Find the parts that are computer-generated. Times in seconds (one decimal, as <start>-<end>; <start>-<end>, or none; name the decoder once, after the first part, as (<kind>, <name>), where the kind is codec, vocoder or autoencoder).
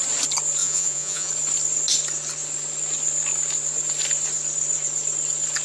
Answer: 0.6-1.3 (vocoder, Vocos)